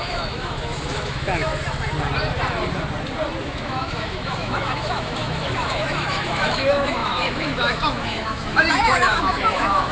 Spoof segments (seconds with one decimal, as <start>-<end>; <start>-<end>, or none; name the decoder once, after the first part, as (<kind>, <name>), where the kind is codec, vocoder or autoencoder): 0.0-1.5 (autoencoder, DAC-VAE); 3.4-9.9